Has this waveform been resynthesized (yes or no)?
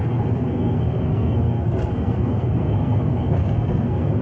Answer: yes